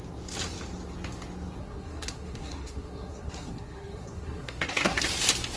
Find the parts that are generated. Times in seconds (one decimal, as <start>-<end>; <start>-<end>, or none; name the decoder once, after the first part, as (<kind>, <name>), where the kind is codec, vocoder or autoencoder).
1.6-5.0 (codec, SNAC)